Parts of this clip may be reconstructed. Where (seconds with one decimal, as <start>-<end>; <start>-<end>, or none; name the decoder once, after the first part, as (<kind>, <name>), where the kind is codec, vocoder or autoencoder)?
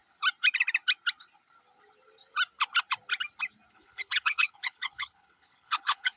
3.7-6.2 (codec, HILCodec)